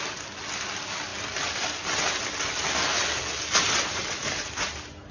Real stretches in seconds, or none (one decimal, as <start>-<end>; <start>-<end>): 0.0-5.1